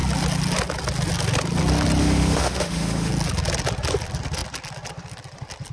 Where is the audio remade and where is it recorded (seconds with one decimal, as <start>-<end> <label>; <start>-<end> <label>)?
0.0-2.0 recorded; 2.0-3.1 remade; 3.1-5.7 recorded